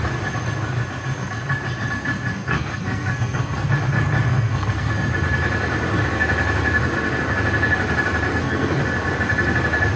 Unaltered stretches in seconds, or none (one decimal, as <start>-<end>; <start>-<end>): 0.0-2.4; 3.7-4.3; 4.9-8.3; 8.8-10.0